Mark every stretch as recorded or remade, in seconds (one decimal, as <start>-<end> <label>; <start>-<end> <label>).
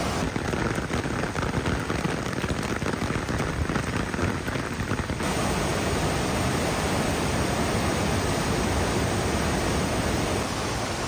0.0-5.7 recorded; 5.7-8.3 remade; 8.3-11.1 recorded